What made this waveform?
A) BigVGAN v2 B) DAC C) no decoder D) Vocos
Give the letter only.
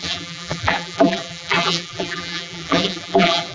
A